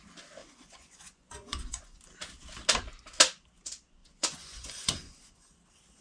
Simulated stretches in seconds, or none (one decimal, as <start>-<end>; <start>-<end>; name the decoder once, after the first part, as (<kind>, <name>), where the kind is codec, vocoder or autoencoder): 0.4-2.0 (vocoder, Vocos); 4.0-5.6